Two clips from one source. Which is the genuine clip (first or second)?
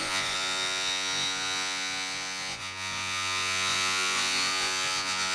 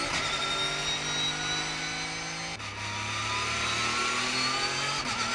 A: second